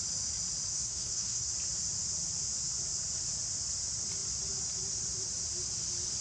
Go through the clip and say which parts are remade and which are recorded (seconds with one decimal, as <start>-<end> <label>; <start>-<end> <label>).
0.0-0.7 recorded; 0.7-1.5 remade; 1.5-6.2 recorded